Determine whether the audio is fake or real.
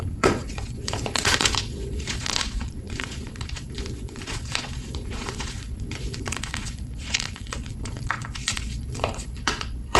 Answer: fake